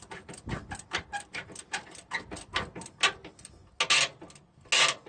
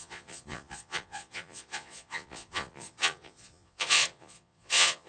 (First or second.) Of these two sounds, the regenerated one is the second